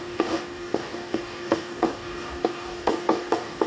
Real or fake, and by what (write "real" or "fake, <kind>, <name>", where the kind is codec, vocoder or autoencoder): fake, codec, DAC